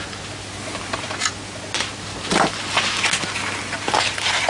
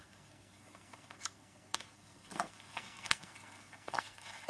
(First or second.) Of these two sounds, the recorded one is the first